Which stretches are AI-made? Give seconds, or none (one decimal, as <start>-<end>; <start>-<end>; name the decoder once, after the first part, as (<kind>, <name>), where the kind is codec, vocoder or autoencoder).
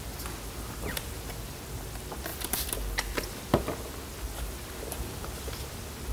none